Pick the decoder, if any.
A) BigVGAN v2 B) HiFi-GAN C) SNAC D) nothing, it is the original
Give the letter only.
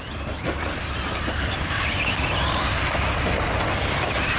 A